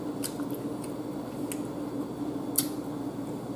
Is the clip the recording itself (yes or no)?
yes